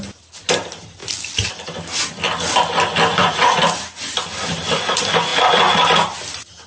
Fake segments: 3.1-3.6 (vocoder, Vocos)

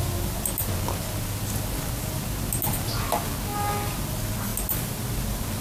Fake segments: none

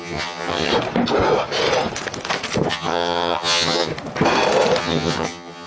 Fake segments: 0.0-0.7 (vocoder, HiFi-GAN); 2.7-3.9; 4.8-5.7